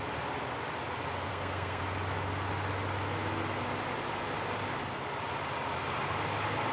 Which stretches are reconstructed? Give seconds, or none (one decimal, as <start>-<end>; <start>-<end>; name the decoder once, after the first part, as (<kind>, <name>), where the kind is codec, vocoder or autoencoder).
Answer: 1.3-1.8 (codec, SNAC)